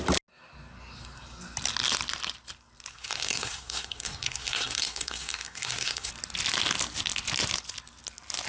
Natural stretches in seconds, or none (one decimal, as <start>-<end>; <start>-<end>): 0.0-2.9; 6.1-8.5